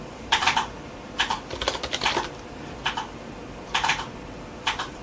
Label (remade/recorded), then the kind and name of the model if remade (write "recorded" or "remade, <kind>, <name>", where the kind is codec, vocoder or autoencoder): recorded